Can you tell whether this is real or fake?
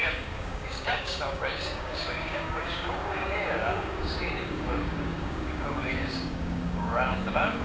fake